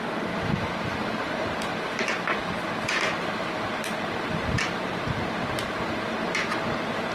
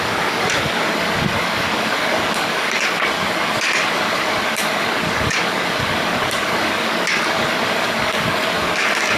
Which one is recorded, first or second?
first